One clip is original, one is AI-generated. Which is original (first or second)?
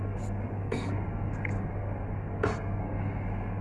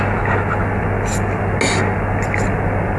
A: second